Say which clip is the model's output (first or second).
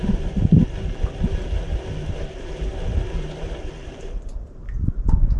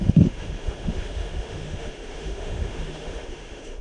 second